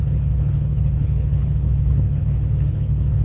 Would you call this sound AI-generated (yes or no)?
yes